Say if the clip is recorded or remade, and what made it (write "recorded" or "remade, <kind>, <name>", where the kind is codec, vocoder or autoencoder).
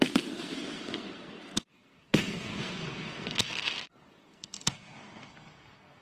remade, codec, SNAC